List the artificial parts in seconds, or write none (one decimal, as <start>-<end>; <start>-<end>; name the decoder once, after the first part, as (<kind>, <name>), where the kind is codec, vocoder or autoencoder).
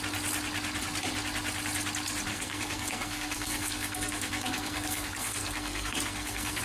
2.3-6.6 (codec, SNAC)